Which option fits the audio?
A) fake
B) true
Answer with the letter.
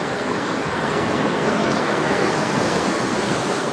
A